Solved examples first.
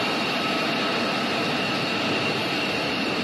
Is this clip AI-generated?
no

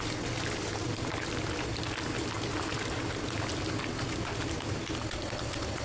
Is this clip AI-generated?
no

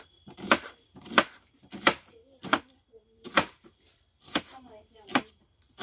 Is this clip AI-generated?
yes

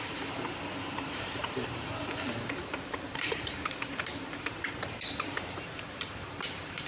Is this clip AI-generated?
yes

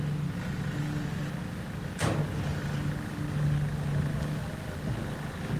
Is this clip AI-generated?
no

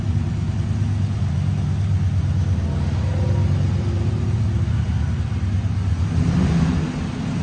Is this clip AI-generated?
no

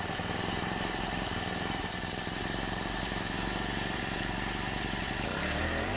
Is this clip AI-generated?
yes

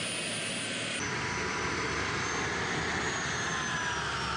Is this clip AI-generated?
no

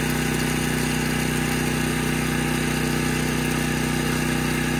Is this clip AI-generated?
no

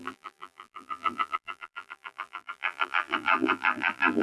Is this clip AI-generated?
yes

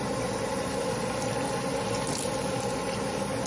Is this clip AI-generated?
no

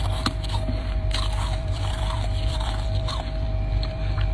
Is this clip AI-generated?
yes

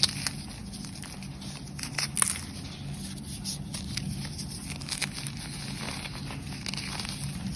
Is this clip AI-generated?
no